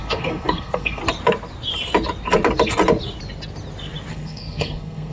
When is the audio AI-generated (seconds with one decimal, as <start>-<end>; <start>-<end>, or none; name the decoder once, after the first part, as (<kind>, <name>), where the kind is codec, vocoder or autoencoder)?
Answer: 0.0-1.0 (codec, SNAC); 4.1-5.1